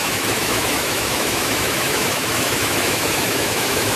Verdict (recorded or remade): remade